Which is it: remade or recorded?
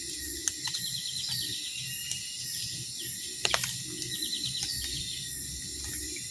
recorded